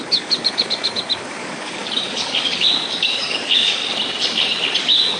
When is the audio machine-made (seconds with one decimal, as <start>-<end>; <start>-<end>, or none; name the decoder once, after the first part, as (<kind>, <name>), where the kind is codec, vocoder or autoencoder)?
0.0-3.8 (codec, DAC); 4.8-5.2